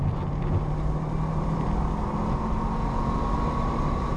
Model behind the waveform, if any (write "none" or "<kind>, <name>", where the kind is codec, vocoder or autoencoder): none